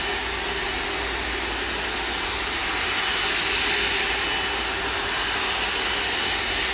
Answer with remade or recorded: recorded